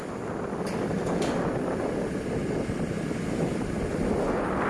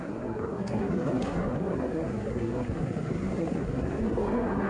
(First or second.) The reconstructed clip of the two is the second